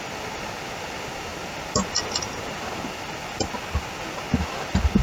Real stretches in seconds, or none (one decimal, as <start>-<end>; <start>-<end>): 0.0-5.0